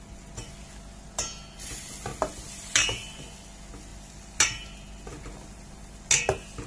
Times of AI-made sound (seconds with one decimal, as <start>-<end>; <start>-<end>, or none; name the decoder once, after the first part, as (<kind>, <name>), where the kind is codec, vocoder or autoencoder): none